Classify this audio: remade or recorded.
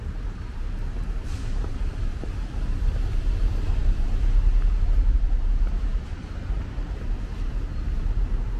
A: remade